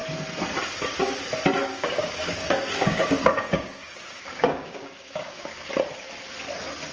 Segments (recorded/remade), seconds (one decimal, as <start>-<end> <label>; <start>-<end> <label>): 0.0-1.6 recorded; 1.6-5.7 remade; 5.7-6.9 recorded